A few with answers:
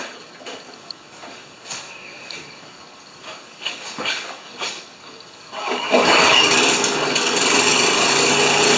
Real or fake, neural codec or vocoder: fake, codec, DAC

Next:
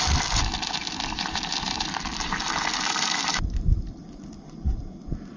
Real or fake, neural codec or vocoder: fake, vocoder, BigVGAN v2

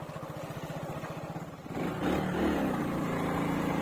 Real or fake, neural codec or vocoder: real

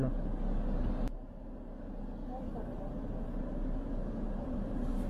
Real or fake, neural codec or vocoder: real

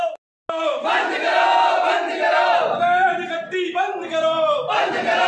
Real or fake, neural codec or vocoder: real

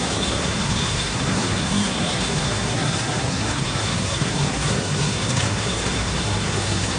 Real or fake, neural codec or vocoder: fake, codec, SNAC